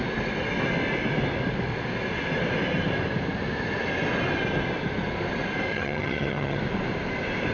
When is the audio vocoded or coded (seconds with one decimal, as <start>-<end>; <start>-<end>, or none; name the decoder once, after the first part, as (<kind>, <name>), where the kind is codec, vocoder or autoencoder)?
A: 5.7-6.6 (vocoder, HiFi-GAN)